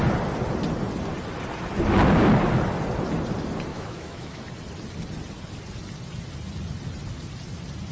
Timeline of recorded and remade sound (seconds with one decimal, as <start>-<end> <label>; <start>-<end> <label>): 0.0-3.7 recorded; 3.7-4.4 remade; 4.4-7.9 recorded